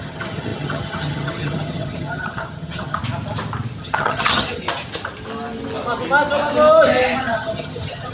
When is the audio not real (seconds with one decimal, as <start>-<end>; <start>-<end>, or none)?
0.0-3.0; 3.8-4.6; 7.2-8.1